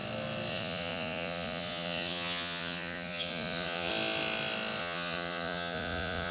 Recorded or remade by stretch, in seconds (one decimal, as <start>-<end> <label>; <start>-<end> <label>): 0.0-0.5 recorded; 0.5-3.9 remade; 3.9-4.8 recorded; 4.8-6.3 remade